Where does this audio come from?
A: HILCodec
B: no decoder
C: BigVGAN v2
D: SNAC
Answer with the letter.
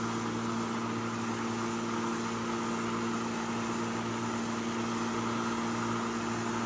B